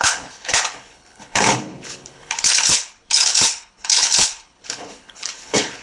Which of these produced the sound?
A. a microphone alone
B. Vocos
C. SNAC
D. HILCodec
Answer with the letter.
D